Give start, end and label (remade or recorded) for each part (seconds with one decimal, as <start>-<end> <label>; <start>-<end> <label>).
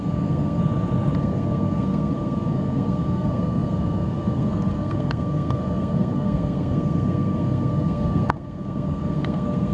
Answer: 0.0-0.6 remade; 0.6-1.2 recorded; 1.2-9.7 remade